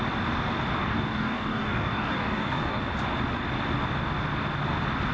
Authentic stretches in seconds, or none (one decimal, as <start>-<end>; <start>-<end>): 0.0-0.8; 2.8-5.1